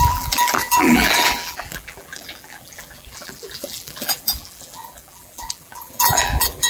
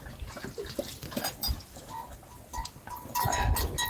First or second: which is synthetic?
first